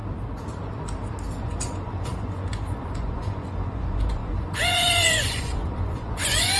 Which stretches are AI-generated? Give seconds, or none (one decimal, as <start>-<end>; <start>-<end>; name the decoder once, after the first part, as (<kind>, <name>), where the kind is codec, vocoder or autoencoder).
1.4-6.6 (vocoder, Vocos)